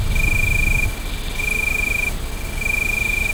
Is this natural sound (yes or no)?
yes